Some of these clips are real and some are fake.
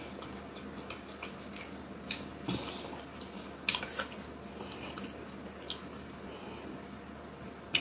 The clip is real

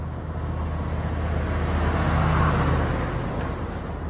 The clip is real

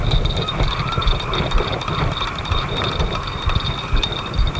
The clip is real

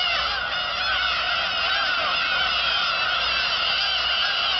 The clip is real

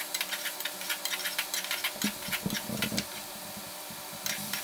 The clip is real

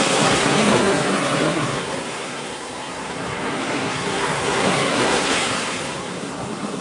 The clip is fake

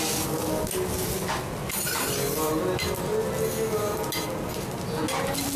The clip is real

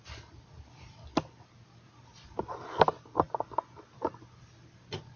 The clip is real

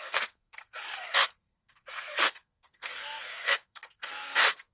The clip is fake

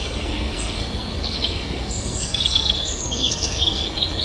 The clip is fake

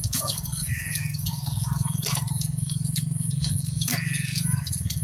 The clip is fake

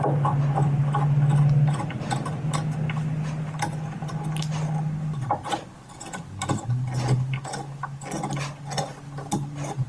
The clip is real